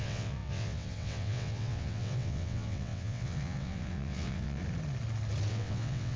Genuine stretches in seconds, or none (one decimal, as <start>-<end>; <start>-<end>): 4.6-5.5